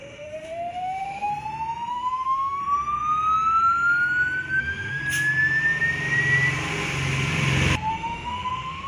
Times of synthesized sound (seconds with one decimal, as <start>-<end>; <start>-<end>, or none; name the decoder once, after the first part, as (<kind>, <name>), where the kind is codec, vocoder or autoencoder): 0.0-1.3 (autoencoder, DAC-VAE); 1.9-2.6; 4.6-5.0; 7.9-8.9